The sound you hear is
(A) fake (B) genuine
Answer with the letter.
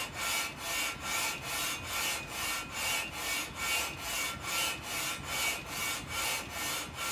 B